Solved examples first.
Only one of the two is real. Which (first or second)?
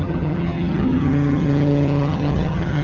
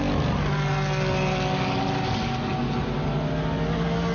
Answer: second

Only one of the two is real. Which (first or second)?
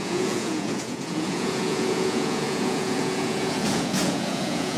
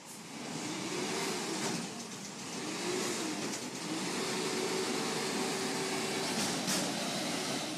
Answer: second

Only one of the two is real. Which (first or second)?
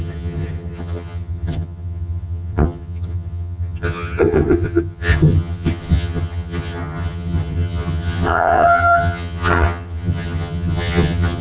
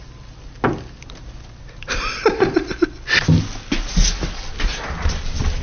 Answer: second